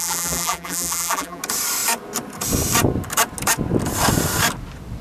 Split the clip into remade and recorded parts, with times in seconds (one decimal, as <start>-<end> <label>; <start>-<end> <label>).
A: 0.0-1.4 remade; 1.4-5.0 recorded